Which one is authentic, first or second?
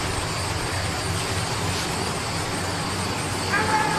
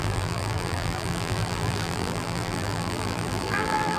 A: first